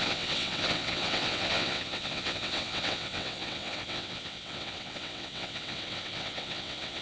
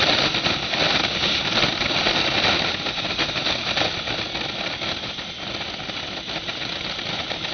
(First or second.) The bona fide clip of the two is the second